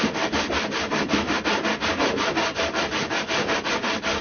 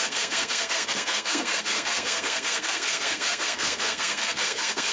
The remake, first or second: second